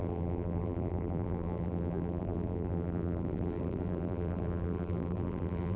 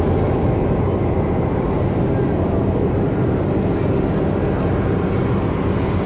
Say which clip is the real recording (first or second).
second